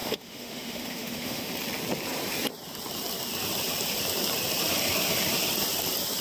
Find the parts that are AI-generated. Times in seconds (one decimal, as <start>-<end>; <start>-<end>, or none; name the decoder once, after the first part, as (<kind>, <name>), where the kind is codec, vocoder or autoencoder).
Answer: 0.0-1.5 (autoencoder, DAC-VAE)